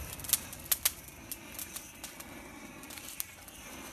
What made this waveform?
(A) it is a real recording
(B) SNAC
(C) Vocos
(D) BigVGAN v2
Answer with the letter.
A